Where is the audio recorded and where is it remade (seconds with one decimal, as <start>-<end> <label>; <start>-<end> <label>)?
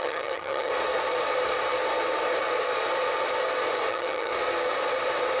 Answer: 0.0-0.7 remade; 0.7-3.9 recorded; 3.9-4.3 remade; 4.3-5.4 recorded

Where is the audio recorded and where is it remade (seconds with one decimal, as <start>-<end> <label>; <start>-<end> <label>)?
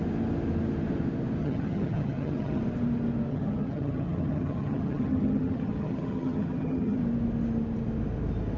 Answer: 0.0-1.4 recorded; 1.4-2.6 remade; 2.6-3.3 recorded; 3.3-7.0 remade; 7.0-8.6 recorded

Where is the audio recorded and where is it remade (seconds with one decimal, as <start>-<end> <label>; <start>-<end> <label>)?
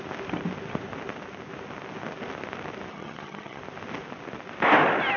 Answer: 0.0-2.9 recorded; 2.9-3.6 remade; 3.6-5.2 recorded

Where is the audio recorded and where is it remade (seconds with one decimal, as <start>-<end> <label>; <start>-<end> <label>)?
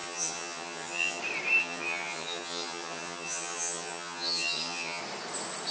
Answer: 0.0-1.2 remade; 1.2-1.6 recorded; 1.6-5.0 remade; 5.0-5.7 recorded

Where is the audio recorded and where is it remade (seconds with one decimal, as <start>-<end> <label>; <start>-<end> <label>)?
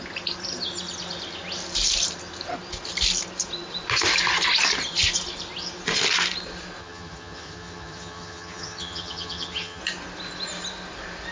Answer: 0.0-6.8 recorded; 6.8-9.8 remade; 9.8-11.3 recorded